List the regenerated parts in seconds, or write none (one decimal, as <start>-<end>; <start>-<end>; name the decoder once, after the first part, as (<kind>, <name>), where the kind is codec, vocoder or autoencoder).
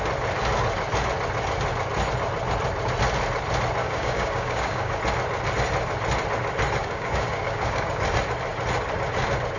3.8-5.0 (codec, DAC); 6.8-8.0